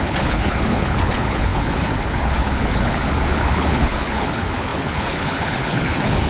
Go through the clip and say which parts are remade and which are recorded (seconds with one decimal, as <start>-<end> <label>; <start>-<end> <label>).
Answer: 0.0-6.3 remade